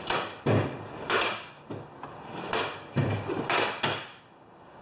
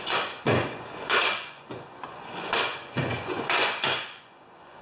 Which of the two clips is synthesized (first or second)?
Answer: second